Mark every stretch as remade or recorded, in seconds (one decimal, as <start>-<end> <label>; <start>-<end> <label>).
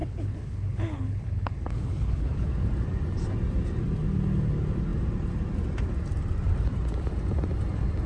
0.0-2.5 remade; 2.5-8.1 recorded